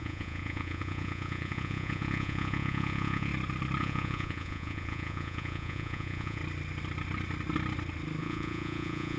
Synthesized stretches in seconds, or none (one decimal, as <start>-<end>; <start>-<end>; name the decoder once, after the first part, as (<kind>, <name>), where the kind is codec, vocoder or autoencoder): 0.0-3.3 (vocoder, Vocos); 3.8-6.4; 8.2-9.2